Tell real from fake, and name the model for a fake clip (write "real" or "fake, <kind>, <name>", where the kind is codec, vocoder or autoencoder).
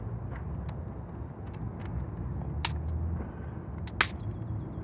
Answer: real